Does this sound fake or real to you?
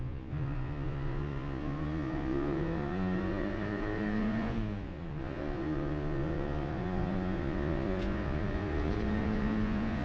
fake